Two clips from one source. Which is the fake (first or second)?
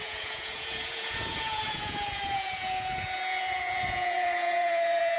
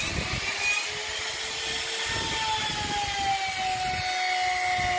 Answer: first